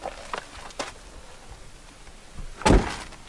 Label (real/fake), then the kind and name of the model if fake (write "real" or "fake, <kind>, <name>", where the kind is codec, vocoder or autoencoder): real